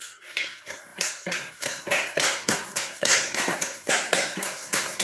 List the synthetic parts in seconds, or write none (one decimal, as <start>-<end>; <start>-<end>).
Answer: 0.0-5.0